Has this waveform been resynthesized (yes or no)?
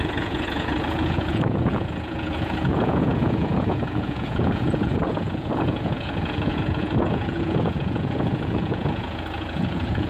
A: yes